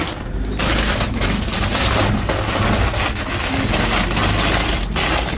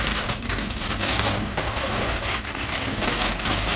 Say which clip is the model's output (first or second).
second